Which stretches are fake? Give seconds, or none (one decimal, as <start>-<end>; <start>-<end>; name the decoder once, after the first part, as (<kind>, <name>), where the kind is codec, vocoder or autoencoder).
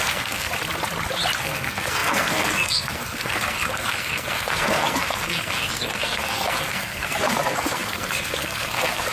0.0-0.5 (codec, SNAC); 1.4-9.1